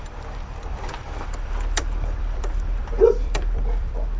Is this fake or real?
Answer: fake